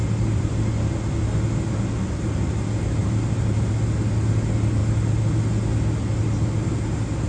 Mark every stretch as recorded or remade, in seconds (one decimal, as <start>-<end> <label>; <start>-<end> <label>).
0.0-0.5 remade; 0.5-3.0 recorded; 3.0-3.7 remade; 3.7-7.3 recorded